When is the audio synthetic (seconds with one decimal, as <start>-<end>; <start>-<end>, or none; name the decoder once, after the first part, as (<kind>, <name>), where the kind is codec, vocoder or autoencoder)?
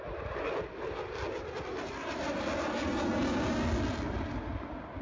none